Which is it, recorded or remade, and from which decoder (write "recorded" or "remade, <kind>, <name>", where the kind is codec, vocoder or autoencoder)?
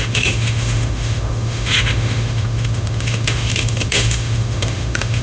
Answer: remade, autoencoder, DAC-VAE